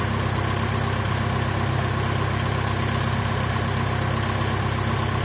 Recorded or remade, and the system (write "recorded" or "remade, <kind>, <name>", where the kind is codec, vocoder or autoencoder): recorded